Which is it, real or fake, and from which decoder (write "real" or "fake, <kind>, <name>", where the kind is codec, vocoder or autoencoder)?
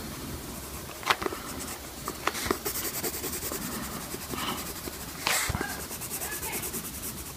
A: real